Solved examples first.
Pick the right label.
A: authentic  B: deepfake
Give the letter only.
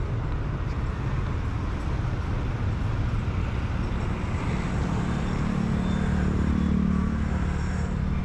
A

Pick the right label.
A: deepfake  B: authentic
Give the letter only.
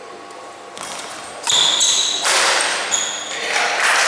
B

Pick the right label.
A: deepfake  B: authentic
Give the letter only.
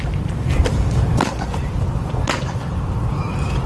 A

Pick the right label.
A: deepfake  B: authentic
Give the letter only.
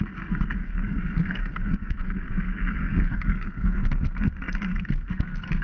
A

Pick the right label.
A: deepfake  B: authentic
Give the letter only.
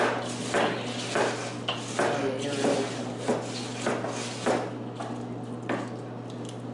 B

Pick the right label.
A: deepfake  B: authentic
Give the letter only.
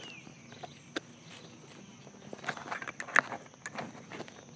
B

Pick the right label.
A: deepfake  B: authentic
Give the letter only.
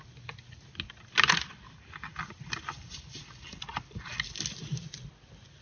B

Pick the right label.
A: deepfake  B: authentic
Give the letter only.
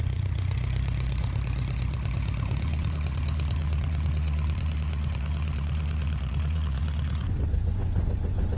A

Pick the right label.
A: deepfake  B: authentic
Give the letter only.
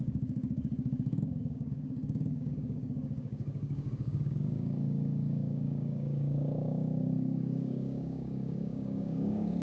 A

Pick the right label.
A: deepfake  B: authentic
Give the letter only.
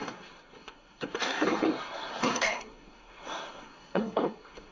A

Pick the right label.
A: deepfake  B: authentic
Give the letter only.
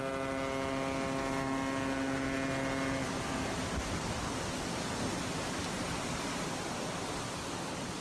B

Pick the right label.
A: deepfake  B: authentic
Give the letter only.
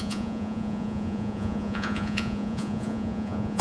A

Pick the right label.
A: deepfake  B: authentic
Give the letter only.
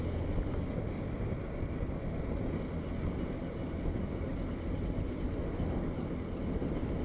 B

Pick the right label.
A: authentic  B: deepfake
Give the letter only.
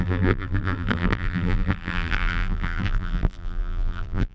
B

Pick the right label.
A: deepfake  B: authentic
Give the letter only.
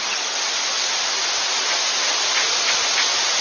B